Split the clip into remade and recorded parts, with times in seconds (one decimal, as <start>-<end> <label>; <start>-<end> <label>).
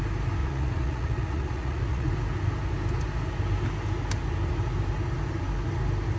0.0-0.4 recorded; 0.4-2.1 remade; 2.1-6.2 recorded